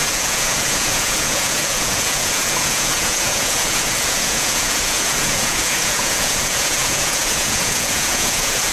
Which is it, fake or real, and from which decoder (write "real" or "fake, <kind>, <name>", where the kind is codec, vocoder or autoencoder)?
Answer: fake, vocoder, Vocos